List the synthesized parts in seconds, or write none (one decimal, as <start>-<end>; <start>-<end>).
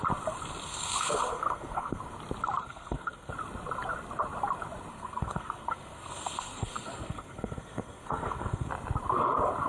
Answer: 0.6-2.0; 2.6-3.3; 4.9-8.7